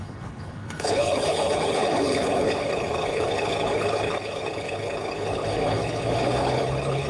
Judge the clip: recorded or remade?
remade